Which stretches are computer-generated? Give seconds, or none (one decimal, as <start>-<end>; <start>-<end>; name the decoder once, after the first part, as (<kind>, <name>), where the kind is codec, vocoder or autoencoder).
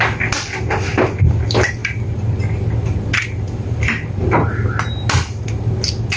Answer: none